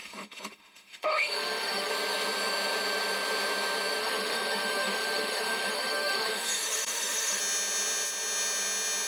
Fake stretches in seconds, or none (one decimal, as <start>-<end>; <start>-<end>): 0.0-1.9; 4.0-7.4